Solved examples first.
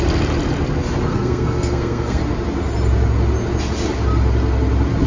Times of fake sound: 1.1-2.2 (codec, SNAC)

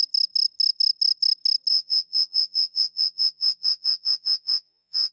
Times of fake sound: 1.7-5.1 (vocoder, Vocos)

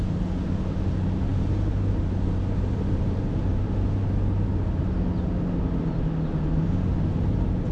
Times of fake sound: none